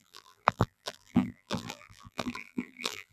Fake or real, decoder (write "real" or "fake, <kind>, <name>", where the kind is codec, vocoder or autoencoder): fake, vocoder, BigVGAN v2